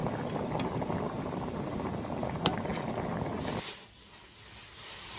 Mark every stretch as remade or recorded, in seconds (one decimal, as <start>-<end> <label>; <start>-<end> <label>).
0.0-0.7 recorded; 0.7-2.7 remade; 2.7-4.7 recorded; 4.7-5.2 remade